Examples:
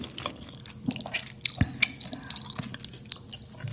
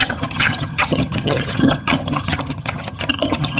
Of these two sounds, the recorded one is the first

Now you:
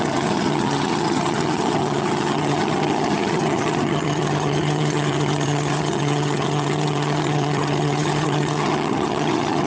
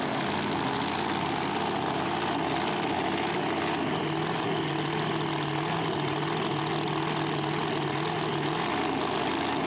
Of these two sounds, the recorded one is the second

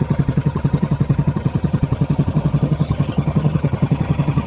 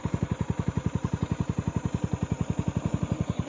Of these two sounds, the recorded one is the second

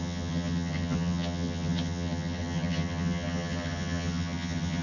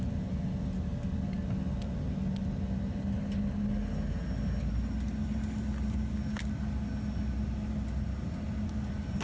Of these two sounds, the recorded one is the second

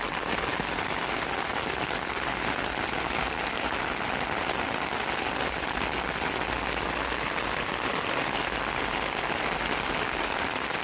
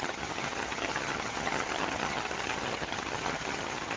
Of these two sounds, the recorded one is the first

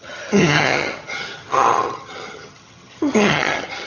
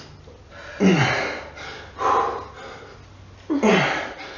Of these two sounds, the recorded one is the second